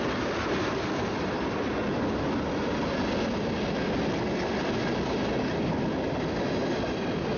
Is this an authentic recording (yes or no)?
yes